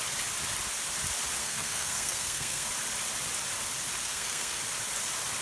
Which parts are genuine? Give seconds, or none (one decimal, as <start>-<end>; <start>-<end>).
0.0-1.4; 2.7-4.0; 4.6-5.4